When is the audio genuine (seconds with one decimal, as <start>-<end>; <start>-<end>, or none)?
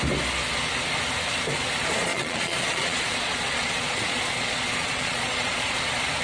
0.0-2.1; 5.8-6.2